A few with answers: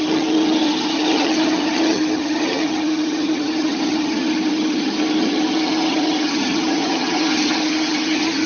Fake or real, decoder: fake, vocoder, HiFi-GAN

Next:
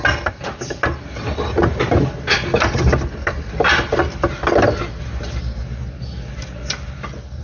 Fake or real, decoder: real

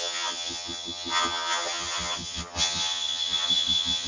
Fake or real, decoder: fake, vocoder, HiFi-GAN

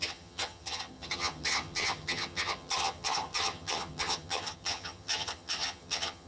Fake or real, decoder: fake, vocoder, HiFi-GAN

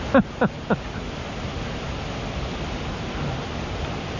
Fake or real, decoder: real